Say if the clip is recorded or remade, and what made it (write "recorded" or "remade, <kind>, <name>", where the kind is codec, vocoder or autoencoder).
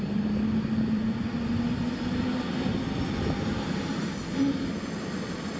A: recorded